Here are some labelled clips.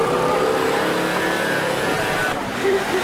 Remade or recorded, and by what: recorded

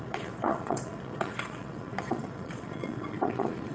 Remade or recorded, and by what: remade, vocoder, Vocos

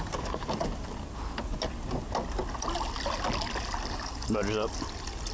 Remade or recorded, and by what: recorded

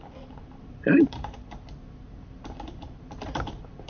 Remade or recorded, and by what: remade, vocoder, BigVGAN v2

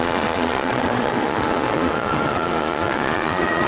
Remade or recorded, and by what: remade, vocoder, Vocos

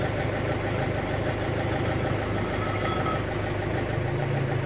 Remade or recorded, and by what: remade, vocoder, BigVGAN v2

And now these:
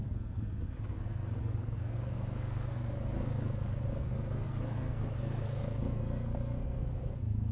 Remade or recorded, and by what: remade, codec, SNAC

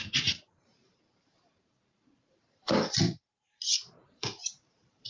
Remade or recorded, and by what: remade, vocoder, BigVGAN v2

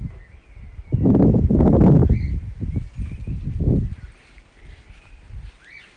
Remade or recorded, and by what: recorded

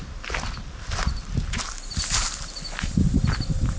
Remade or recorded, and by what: recorded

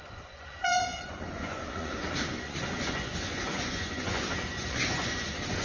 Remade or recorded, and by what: remade, vocoder, Vocos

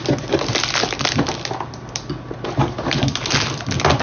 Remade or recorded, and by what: recorded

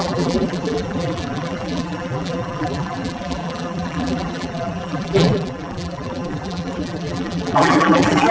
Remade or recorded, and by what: remade, vocoder, BigVGAN v2